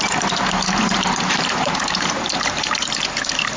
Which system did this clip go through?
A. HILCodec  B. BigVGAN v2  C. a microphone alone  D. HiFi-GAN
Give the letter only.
B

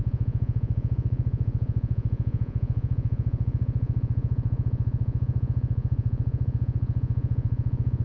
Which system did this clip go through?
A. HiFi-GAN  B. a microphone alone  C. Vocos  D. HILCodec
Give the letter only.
C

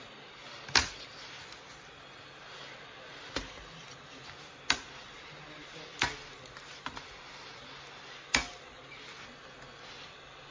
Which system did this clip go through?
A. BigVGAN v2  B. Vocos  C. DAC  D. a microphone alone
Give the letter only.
D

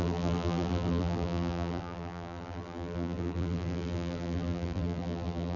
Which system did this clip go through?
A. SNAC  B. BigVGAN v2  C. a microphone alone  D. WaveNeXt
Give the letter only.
B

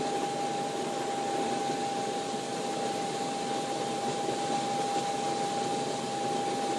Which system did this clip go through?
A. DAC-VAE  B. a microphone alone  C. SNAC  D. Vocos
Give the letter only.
B